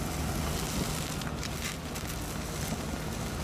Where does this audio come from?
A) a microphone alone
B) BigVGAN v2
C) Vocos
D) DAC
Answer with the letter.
A